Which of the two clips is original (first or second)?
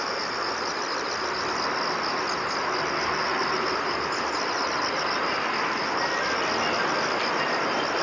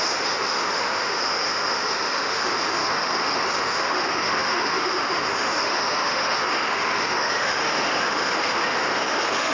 first